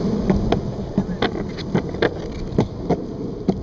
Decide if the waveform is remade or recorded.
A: recorded